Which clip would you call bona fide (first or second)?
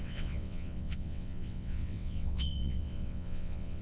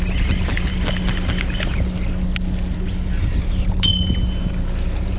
second